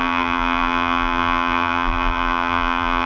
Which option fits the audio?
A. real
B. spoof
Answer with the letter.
B